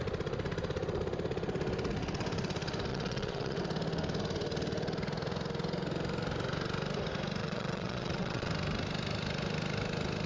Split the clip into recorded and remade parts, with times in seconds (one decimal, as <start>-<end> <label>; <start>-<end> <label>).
0.0-2.9 recorded; 2.9-3.6 remade; 3.6-7.4 recorded; 7.4-8.5 remade; 8.5-10.3 recorded